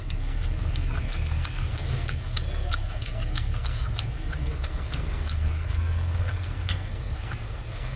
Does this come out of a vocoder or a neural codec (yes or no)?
yes